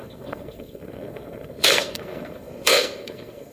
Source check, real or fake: fake